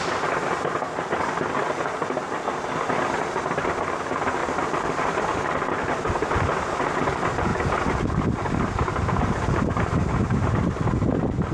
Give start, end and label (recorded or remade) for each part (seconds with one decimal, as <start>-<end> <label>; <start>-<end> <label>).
0.0-4.4 recorded; 4.4-5.2 remade; 5.2-7.5 recorded; 7.5-10.8 remade; 10.8-11.5 recorded